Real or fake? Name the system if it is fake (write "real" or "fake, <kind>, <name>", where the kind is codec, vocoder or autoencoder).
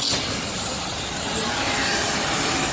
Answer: real